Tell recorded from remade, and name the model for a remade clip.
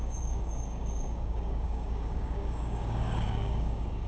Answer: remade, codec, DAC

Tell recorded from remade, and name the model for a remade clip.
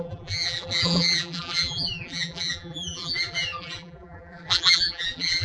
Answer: remade, vocoder, BigVGAN v2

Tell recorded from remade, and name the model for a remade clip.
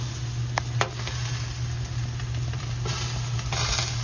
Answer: recorded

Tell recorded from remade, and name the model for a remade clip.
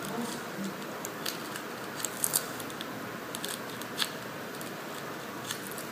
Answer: recorded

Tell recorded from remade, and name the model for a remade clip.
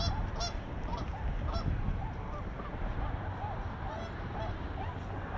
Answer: recorded